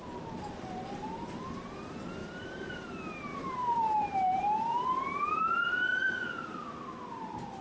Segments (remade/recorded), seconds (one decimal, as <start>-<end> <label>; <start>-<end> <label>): 0.0-2.2 recorded; 2.2-2.7 remade; 2.7-3.3 recorded; 3.3-5.3 remade; 5.3-7.6 recorded